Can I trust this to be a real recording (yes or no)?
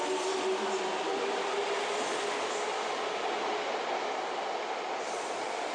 yes